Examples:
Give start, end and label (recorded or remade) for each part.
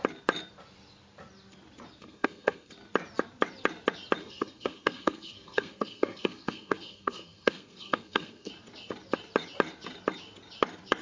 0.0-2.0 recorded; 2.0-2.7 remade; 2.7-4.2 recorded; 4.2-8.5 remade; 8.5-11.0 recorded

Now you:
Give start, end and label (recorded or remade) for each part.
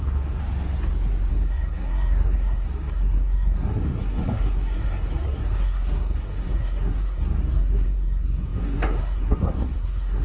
0.0-0.4 remade; 0.4-1.3 recorded; 1.3-10.2 remade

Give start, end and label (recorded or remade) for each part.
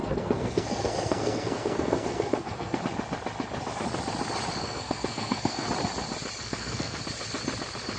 0.0-2.8 remade; 2.8-4.6 recorded; 4.6-5.7 remade; 5.7-6.4 recorded; 6.4-7.0 remade; 7.0-8.0 recorded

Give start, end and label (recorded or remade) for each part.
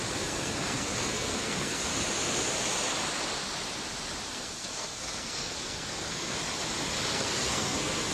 0.0-1.9 remade; 1.9-4.3 recorded; 4.3-6.4 remade; 6.4-7.1 recorded; 7.1-8.1 remade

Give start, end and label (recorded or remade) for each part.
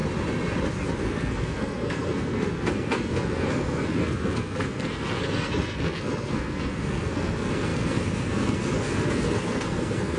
0.0-1.0 recorded; 1.0-10.2 remade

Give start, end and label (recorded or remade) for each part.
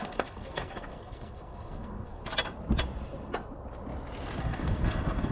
0.0-2.2 remade; 2.2-4.4 recorded; 4.4-5.3 remade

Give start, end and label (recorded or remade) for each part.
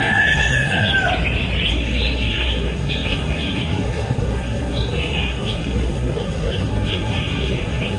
0.0-0.9 remade; 0.9-1.7 recorded; 1.7-8.0 remade